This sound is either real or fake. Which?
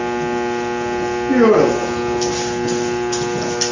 real